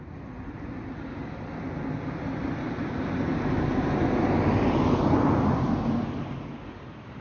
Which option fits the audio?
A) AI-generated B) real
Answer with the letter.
B